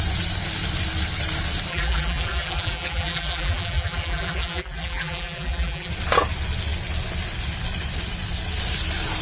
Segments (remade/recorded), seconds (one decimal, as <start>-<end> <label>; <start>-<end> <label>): 0.0-1.7 recorded; 1.7-5.9 remade; 5.9-9.2 recorded